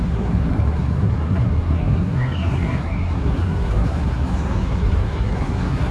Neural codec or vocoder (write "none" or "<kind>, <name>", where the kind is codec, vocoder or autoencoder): codec, SNAC